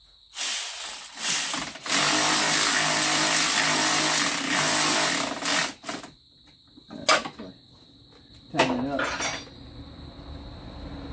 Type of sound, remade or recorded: recorded